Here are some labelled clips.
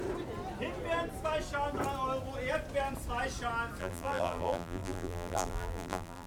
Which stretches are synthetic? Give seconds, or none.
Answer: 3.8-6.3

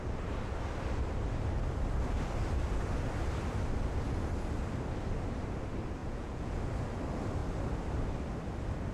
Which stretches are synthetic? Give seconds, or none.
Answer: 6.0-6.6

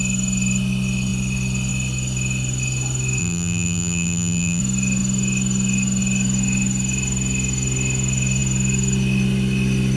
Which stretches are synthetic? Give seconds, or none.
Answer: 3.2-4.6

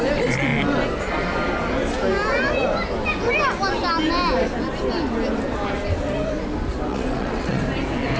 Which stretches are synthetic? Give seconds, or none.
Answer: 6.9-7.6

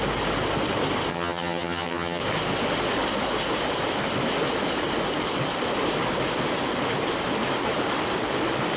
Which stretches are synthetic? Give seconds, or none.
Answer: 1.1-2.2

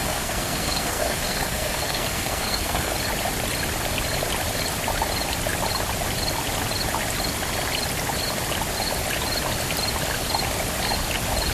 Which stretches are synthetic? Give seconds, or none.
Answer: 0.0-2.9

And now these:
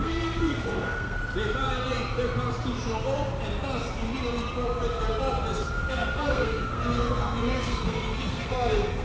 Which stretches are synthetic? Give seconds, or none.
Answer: 0.0-1.2; 5.9-9.0

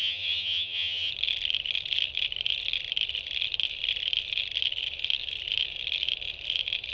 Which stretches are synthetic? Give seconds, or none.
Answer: 0.0-1.1